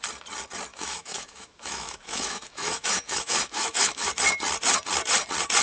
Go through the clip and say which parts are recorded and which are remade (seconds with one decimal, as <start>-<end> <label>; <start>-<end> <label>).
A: 0.0-0.7 recorded; 0.7-4.1 remade; 4.1-5.6 recorded